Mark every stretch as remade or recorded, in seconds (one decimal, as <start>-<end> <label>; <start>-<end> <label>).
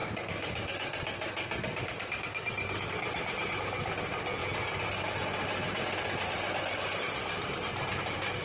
0.0-3.0 remade; 3.0-8.4 recorded